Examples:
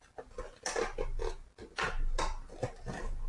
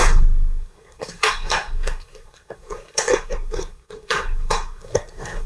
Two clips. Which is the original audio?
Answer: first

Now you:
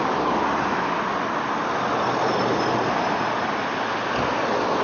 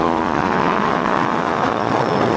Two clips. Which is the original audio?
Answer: first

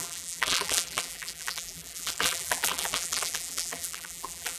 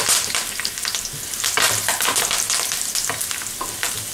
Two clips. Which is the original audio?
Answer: second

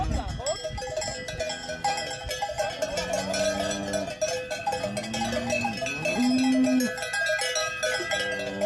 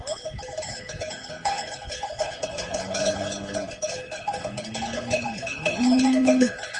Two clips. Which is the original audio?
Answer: first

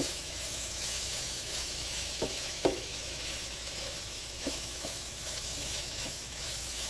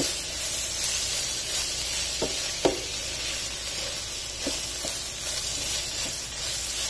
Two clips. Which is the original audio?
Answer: second